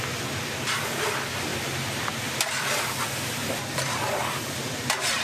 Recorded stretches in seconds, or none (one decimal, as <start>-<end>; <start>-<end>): 0.0-5.2